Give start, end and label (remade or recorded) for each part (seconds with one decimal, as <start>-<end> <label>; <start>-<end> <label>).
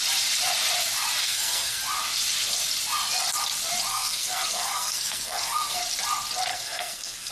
0.0-1.2 recorded; 1.2-1.8 remade; 1.8-3.9 recorded; 3.9-5.8 remade; 5.8-6.5 recorded; 6.5-7.3 remade